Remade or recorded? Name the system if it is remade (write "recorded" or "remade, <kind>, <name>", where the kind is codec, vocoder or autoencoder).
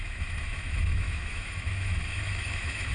remade, autoencoder, DAC-VAE